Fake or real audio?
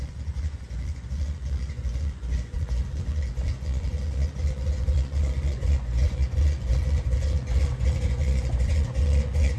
fake